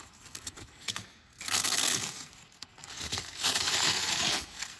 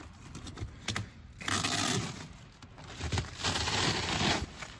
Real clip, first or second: second